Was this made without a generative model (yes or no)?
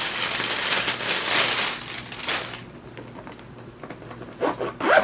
yes